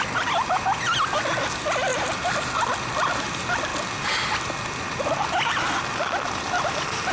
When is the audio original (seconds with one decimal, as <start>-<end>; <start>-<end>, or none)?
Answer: 0.0-7.1